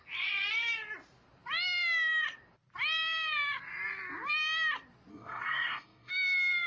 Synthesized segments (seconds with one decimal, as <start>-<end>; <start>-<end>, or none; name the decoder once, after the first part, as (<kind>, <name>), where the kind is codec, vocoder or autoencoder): 5.1-6.1 (codec, SNAC)